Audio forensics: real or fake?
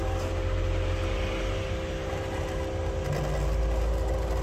real